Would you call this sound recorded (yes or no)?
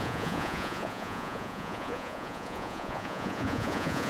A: no